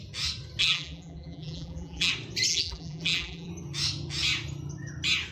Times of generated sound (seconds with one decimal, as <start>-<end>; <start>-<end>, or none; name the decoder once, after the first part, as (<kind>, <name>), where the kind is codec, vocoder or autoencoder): 0.6-2.1 (vocoder, BigVGAN v2); 2.5-3.5